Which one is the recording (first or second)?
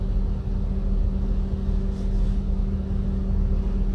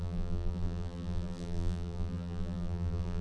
first